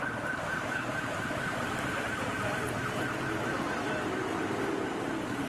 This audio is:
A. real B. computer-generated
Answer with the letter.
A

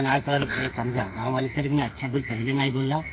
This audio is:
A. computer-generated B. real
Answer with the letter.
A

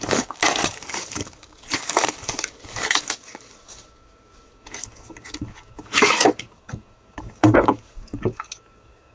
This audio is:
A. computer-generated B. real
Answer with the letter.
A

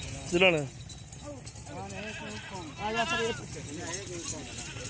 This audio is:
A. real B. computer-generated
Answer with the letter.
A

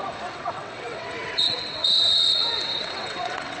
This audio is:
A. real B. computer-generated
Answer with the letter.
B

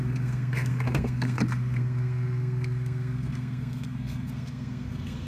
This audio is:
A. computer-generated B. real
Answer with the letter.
A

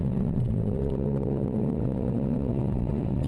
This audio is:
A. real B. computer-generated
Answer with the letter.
B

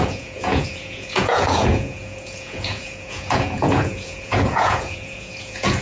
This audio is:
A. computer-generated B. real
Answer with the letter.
A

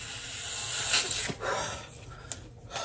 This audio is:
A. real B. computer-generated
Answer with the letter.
A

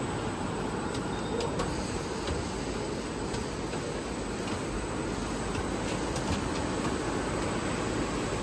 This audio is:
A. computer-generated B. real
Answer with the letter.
B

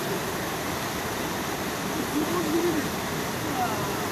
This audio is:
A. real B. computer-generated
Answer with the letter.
A